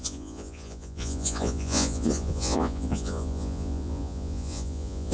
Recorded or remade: remade